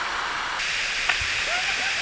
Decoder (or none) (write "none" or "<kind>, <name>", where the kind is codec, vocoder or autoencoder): none